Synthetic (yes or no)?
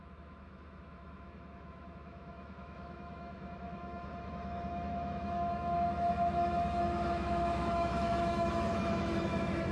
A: yes